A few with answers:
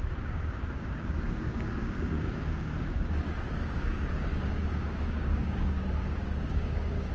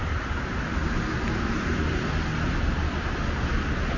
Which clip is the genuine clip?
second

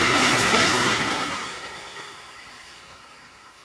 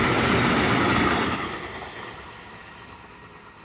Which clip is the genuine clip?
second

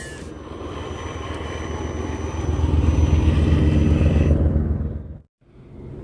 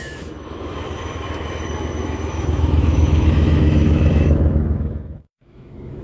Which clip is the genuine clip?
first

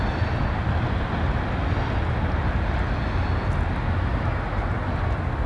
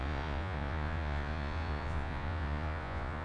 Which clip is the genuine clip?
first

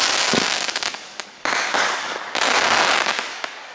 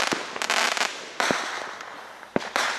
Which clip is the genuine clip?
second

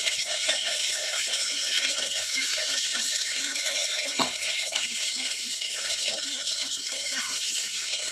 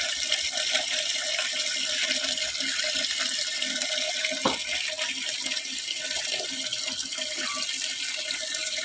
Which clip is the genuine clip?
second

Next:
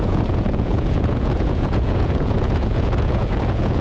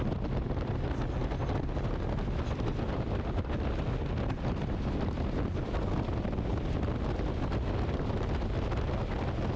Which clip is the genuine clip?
second